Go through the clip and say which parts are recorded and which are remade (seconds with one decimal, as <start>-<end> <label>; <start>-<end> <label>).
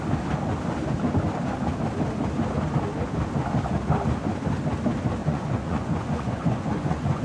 0.0-5.2 recorded; 5.2-7.2 remade